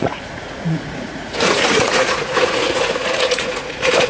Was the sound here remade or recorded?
remade